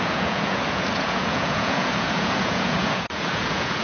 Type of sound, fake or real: fake